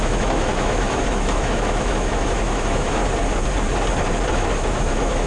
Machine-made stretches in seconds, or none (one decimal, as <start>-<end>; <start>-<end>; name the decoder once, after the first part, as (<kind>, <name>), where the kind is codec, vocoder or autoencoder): 0.0-3.0 (autoencoder, DAC-VAE); 4.3-5.3

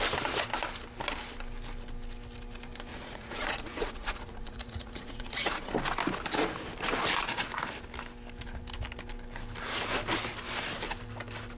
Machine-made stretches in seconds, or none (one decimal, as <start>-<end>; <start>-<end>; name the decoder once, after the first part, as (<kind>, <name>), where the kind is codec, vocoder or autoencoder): 2.9-5.7 (vocoder, Vocos)

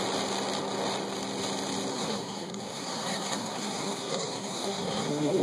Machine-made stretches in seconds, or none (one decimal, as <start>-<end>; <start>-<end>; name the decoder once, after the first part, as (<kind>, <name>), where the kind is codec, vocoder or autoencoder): 1.9-5.4 (codec, SNAC)